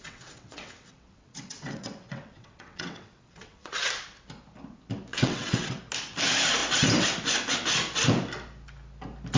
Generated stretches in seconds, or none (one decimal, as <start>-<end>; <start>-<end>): 0.0-3.9; 5.1-5.8

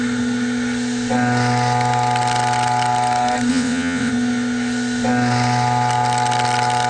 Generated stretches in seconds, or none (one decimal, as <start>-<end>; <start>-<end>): 3.5-4.1

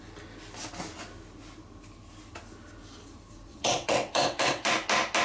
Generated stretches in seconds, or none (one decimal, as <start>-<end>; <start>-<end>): 3.5-4.7